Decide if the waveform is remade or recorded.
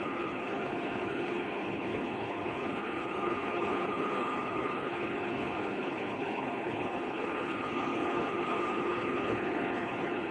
remade